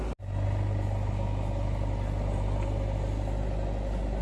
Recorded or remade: recorded